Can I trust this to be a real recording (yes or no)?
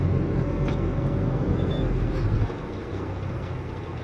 no